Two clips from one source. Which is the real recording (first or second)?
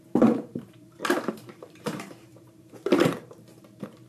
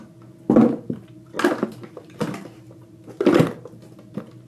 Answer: second